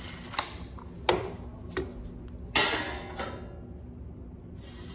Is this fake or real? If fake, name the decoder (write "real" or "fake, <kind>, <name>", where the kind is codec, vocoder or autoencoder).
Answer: real